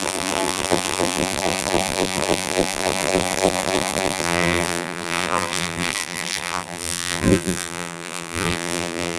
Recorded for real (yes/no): no